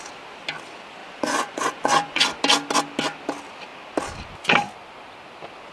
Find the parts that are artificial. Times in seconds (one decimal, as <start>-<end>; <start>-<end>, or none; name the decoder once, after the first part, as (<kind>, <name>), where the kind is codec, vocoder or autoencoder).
1.0-2.2 (vocoder, Vocos)

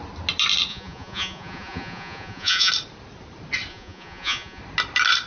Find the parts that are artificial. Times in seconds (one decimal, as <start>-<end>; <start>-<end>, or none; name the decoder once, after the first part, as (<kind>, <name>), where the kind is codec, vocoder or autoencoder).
0.7-2.7 (vocoder, Vocos); 3.7-4.6

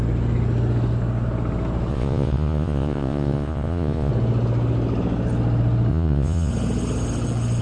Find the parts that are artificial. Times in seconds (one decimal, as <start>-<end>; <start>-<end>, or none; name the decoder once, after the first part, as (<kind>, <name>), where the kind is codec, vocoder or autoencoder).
1.9-4.1 (vocoder, Vocos); 5.9-6.5

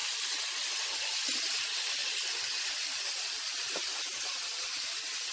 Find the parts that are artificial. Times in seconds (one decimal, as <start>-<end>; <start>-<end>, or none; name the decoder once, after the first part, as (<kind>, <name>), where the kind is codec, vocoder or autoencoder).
none

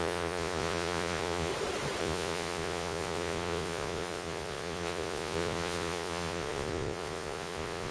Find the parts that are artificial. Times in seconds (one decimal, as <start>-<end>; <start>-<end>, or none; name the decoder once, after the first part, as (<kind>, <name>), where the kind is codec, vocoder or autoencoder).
0.0-1.5 (vocoder, Vocos); 2.0-7.9